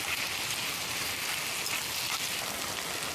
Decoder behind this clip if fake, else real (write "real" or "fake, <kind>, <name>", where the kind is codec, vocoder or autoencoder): real